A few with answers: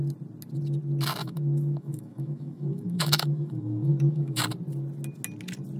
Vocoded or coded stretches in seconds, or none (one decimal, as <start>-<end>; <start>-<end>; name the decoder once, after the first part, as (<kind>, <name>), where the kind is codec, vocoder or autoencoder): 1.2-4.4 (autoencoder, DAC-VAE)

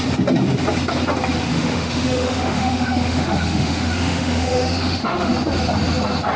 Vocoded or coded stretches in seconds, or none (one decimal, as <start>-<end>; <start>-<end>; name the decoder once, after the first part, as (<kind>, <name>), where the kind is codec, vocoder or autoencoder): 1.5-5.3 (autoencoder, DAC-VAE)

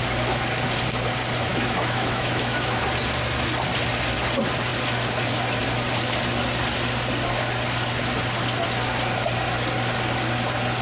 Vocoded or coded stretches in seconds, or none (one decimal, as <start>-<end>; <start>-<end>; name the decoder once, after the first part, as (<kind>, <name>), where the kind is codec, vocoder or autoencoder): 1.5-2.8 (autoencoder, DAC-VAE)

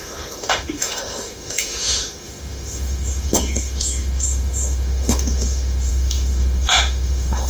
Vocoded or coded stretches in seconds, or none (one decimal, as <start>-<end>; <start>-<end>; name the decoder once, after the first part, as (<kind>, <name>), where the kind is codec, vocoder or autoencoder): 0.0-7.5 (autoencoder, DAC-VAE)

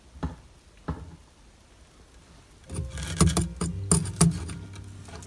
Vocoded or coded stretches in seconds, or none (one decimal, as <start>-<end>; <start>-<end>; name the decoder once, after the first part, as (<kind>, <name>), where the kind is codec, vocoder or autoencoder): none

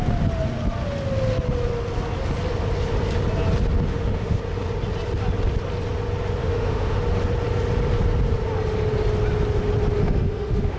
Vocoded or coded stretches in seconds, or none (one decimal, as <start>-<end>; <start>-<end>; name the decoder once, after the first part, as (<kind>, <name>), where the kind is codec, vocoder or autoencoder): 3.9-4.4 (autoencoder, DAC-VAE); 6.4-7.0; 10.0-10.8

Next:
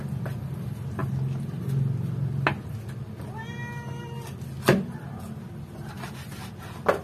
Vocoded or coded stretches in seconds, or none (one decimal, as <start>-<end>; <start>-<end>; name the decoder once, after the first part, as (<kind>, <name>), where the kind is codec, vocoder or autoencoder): none

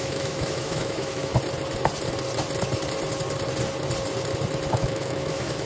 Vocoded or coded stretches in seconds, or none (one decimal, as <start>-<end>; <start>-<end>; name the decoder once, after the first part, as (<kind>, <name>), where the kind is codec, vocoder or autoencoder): 0.0-1.3 (autoencoder, DAC-VAE); 4.7-5.7